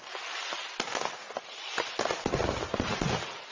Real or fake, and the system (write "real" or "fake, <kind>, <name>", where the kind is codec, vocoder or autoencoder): real